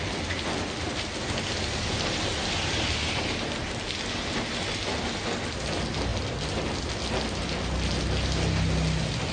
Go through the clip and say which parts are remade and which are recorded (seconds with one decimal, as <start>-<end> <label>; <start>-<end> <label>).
0.0-9.3 recorded